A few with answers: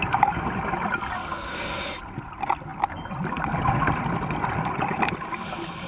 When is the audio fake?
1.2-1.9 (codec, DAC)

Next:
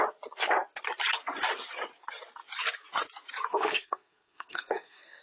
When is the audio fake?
3.5-5.2 (codec, SNAC)

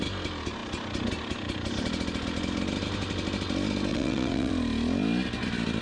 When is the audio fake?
3.9-4.5 (vocoder, WaveNeXt)